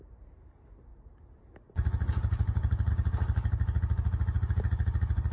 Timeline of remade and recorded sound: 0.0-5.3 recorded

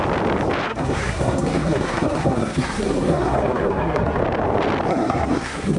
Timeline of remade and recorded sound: 0.0-0.7 recorded; 0.7-4.2 remade; 4.2-4.9 recorded; 4.9-5.8 remade

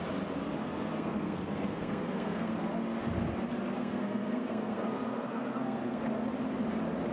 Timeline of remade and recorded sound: 0.0-0.6 recorded; 0.6-2.6 remade; 2.6-3.8 recorded; 3.8-6.0 remade; 6.0-7.1 recorded

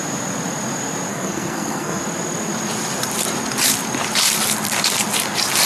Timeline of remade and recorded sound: 0.0-1.1 recorded; 1.1-2.0 remade; 2.0-5.7 recorded

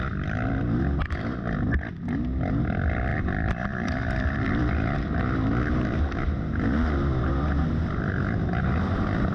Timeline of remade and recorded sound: 0.0-9.3 recorded

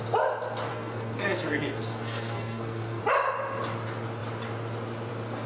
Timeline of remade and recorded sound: 0.0-0.7 recorded; 0.7-3.0 remade; 3.0-5.5 recorded

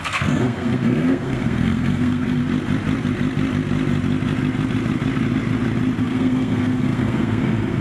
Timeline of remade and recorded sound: 0.0-2.4 remade; 2.4-6.0 recorded; 6.0-7.8 remade

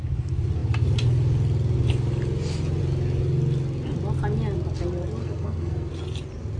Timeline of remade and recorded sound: 0.0-5.2 recorded; 5.2-5.9 remade; 5.9-6.6 recorded